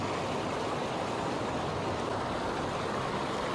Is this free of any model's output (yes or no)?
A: yes